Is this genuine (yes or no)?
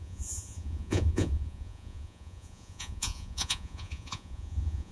no